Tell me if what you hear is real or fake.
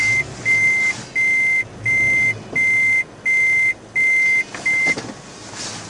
real